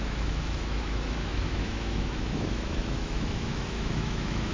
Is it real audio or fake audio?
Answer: fake